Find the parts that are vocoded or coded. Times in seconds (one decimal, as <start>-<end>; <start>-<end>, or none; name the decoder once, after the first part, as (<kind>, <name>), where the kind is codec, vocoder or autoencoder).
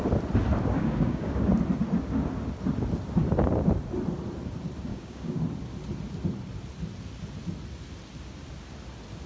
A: 0.6-1.5 (codec, DAC); 4.9-5.4